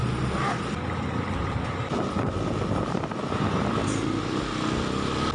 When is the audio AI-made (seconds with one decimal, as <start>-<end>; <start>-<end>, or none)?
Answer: none